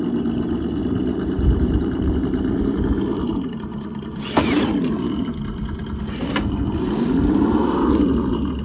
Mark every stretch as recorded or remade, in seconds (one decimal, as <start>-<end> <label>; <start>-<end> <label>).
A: 0.0-0.8 recorded; 0.8-4.6 remade; 4.6-8.6 recorded